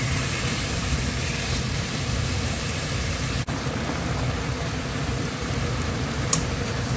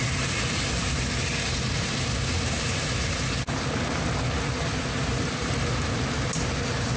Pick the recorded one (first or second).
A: second